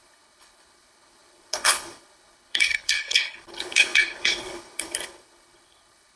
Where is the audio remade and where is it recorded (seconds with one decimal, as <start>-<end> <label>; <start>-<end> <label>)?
0.0-6.2 remade